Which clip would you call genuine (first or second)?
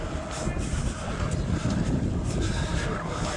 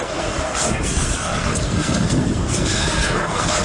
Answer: first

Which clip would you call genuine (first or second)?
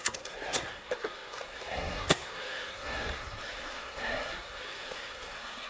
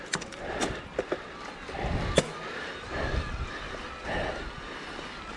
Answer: second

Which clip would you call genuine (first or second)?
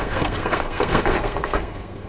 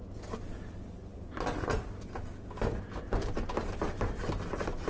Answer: second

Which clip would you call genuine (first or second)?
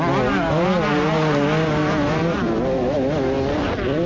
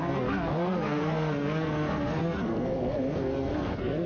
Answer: first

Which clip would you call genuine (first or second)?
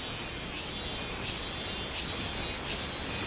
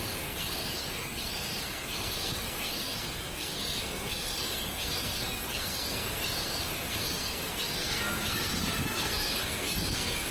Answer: first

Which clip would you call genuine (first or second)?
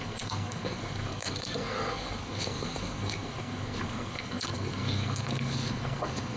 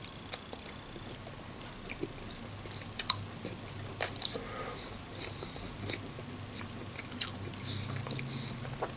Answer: second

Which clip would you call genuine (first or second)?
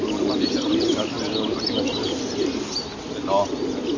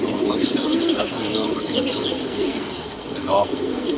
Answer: first